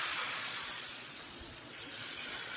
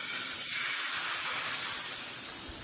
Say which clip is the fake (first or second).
first